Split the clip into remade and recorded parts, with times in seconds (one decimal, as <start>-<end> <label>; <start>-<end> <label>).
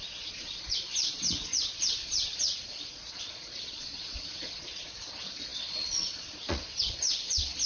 0.0-7.7 remade